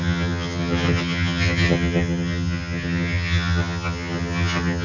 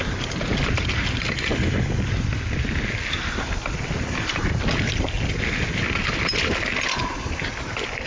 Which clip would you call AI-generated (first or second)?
first